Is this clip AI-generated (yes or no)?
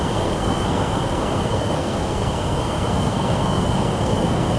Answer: yes